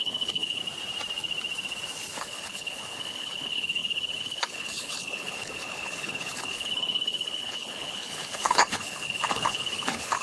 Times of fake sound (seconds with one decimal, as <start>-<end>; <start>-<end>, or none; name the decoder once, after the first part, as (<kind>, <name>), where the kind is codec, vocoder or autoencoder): 0.0-0.6 (codec, HILCodec); 2.2-10.2